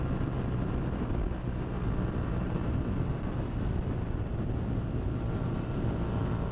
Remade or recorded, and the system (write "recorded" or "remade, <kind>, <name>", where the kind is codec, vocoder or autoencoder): recorded